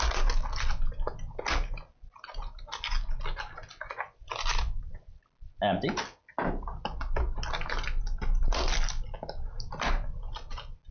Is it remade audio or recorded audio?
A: recorded